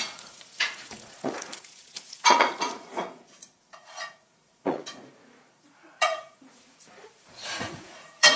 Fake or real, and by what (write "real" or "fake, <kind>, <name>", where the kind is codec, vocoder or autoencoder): fake, vocoder, Vocos